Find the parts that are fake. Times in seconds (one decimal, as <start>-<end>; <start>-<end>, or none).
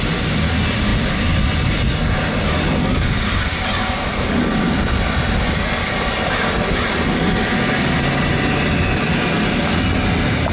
none